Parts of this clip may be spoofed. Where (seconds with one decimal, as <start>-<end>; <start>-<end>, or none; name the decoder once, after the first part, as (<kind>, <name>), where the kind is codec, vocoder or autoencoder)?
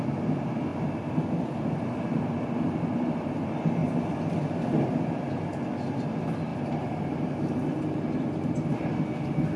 6.5-8.9 (vocoder, BigVGAN v2)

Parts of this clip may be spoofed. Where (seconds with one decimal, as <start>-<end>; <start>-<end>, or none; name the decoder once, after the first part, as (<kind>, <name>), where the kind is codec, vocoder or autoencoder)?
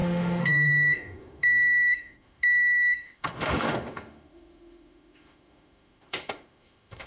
0.0-7.1 (autoencoder, DAC-VAE)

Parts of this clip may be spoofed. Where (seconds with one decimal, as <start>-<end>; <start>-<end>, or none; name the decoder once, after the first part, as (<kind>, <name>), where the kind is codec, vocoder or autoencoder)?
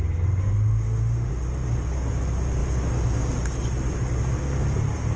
0.4-1.3 (autoencoder, DAC-VAE)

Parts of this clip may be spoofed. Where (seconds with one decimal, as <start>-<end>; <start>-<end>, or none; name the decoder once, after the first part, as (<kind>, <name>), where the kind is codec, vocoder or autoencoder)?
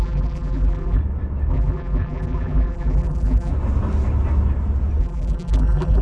0.0-1.0 (vocoder, BigVGAN v2); 1.5-3.5; 5.0-6.0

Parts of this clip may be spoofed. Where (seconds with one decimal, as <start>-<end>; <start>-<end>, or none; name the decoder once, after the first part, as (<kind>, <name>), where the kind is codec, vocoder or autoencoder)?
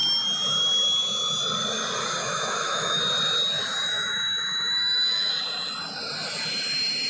2.2-3.0 (autoencoder, DAC-VAE); 3.9-5.3